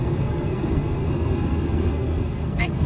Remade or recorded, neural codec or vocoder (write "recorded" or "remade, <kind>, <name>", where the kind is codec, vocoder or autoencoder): remade, codec, SNAC